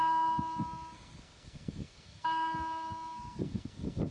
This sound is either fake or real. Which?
fake